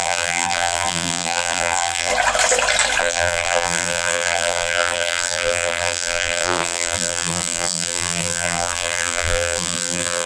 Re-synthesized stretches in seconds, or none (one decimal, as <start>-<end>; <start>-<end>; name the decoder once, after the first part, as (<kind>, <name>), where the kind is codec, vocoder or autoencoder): 0.0-2.1 (vocoder, BigVGAN v2); 3.0-10.3